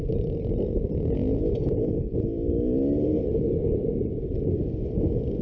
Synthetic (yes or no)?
no